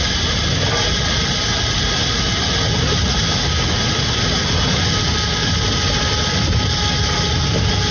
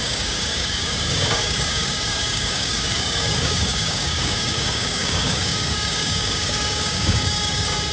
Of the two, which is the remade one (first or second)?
second